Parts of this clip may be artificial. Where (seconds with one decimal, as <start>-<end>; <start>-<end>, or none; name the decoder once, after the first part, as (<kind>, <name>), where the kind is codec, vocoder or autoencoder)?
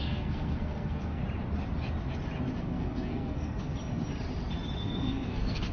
0.0-1.2 (codec, SNAC); 2.6-3.7; 4.8-5.7